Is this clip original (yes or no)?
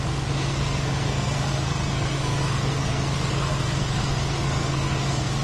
no